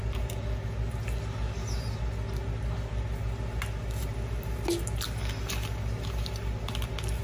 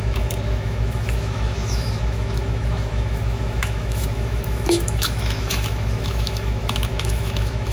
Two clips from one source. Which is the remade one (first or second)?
second